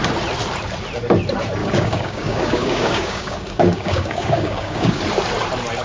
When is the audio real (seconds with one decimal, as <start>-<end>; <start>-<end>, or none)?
0.0-1.6; 5.0-5.8